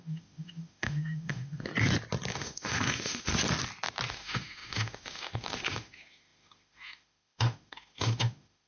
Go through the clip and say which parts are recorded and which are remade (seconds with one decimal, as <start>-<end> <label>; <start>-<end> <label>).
0.0-1.7 remade; 1.7-2.3 recorded; 2.3-3.3 remade; 3.3-4.1 recorded; 4.1-8.7 remade